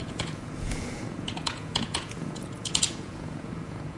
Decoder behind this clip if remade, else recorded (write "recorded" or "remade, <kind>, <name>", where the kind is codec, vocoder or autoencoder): remade, vocoder, Vocos